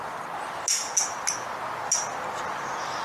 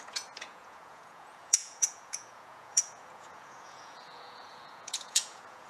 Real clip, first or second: first